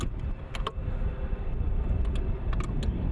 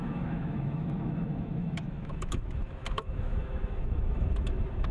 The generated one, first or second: second